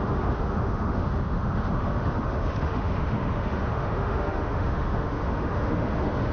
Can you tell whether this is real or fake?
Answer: fake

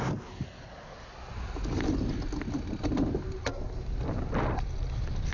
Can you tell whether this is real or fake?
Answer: real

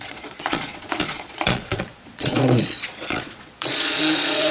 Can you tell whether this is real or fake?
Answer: fake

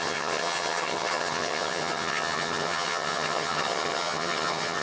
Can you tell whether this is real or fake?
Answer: fake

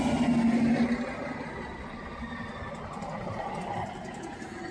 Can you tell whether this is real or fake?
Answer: real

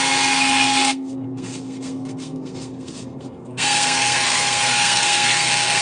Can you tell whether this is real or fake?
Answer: fake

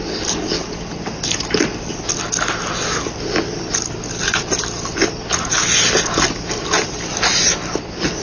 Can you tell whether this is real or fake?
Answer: real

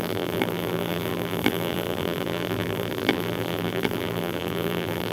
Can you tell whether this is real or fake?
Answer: fake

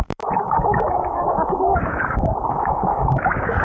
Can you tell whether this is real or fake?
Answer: fake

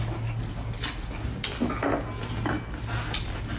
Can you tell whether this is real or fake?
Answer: real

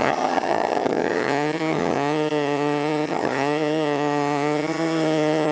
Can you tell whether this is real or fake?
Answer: fake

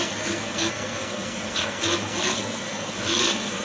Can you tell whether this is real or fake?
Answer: fake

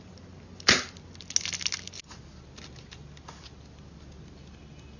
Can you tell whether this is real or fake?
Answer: real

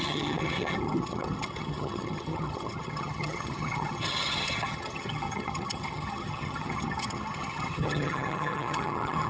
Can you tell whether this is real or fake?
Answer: fake